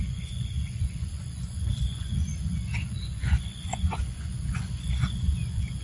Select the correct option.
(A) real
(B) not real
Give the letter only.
B